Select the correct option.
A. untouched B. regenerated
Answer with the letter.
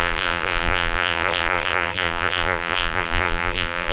B